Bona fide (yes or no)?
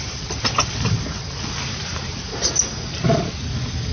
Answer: yes